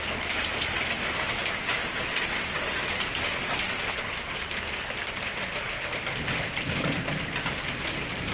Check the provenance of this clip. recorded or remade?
recorded